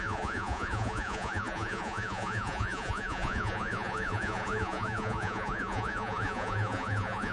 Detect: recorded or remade remade